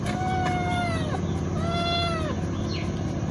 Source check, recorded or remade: recorded